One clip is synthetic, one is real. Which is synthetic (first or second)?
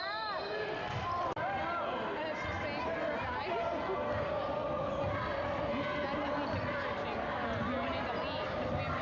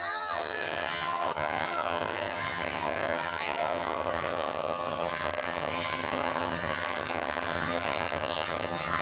second